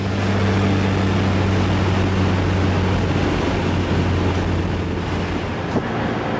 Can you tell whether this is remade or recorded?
recorded